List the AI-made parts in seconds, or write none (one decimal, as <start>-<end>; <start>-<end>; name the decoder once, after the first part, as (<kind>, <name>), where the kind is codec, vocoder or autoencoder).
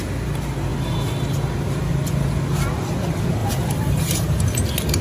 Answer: 3.4-4.6 (vocoder, BigVGAN v2)